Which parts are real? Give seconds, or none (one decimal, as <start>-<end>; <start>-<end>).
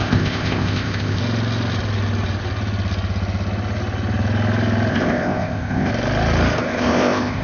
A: 1.2-4.9; 5.9-6.6